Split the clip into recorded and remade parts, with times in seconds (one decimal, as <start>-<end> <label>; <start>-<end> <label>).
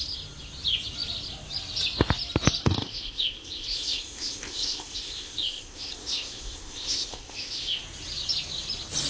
0.0-2.6 recorded; 2.6-7.8 remade; 7.8-9.1 recorded